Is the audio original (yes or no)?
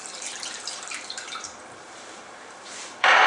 no